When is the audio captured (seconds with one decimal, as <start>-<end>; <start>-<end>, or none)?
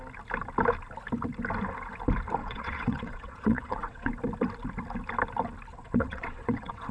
0.0-2.4; 4.1-5.7